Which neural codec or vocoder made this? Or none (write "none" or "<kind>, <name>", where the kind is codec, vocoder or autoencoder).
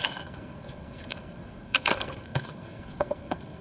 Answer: codec, SNAC